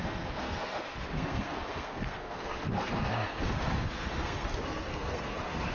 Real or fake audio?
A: fake